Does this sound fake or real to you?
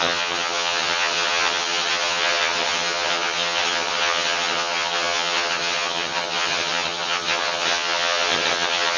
fake